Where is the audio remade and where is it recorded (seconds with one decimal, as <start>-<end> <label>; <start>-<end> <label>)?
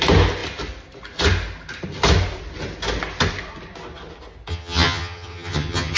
0.0-4.5 recorded; 4.5-6.0 remade